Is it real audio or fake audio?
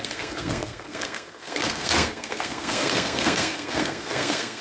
fake